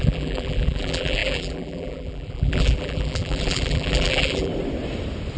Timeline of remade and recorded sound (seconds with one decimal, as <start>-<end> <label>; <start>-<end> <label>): 0.0-4.5 remade; 4.5-5.4 recorded